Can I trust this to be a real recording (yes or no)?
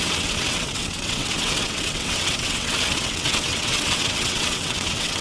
no